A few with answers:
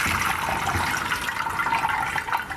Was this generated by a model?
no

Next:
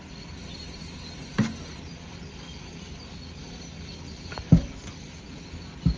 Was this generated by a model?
no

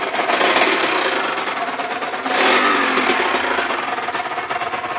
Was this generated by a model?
no